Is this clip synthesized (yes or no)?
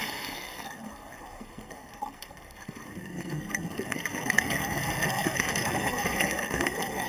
yes